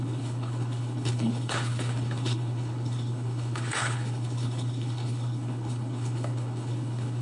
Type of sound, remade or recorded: remade